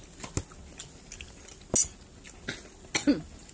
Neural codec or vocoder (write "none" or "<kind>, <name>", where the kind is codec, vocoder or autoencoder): none